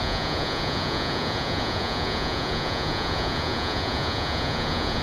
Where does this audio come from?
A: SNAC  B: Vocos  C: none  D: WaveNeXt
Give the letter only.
B